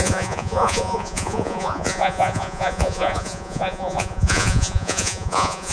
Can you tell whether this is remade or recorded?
remade